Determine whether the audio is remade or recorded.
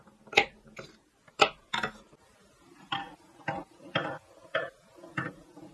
recorded